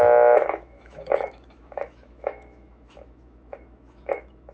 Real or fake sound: fake